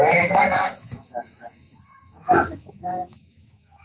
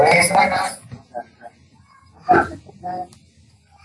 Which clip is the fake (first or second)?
first